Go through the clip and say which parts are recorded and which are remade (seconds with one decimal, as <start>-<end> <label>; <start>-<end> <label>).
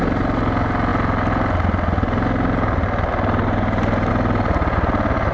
0.0-5.3 recorded